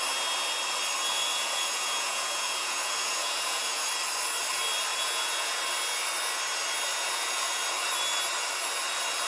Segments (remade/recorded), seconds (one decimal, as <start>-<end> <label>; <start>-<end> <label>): 0.0-1.1 recorded; 1.1-3.9 remade; 3.9-4.9 recorded; 4.9-5.6 remade; 5.6-6.9 recorded; 6.9-7.6 remade; 7.6-9.3 recorded